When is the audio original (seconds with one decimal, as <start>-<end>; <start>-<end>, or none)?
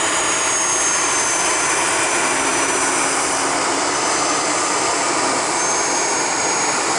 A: 0.0-7.0